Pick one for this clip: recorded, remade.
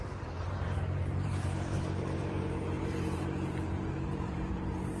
remade